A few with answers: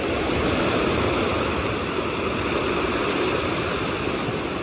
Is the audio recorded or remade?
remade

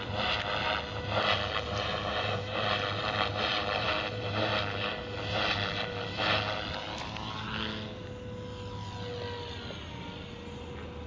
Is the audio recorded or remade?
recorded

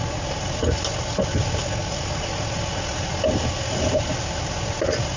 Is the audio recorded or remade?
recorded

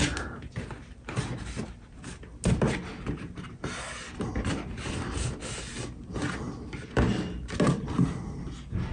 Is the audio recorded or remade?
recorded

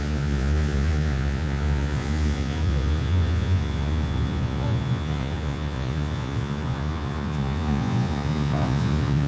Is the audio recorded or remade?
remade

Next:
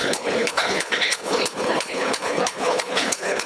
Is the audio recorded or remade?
remade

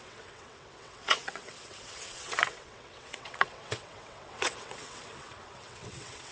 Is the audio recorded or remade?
remade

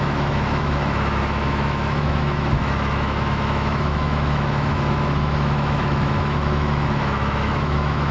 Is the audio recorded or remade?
remade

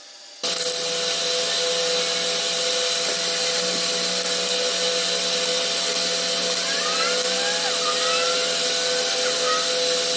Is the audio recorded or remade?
recorded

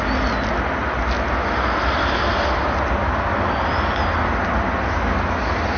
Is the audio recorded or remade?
recorded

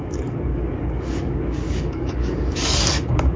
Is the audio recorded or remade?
remade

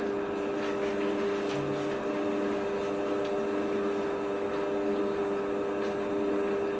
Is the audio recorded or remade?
recorded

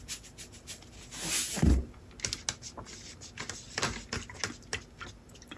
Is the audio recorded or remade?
recorded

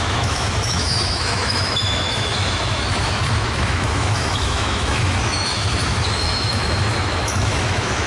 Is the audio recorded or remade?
remade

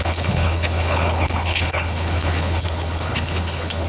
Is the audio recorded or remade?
remade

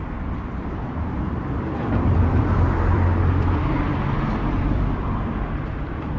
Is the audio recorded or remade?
remade